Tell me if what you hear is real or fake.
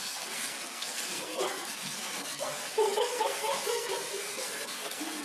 fake